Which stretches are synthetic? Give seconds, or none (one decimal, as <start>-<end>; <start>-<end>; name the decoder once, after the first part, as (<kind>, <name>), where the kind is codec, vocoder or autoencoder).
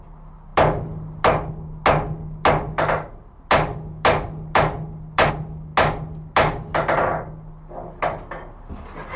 none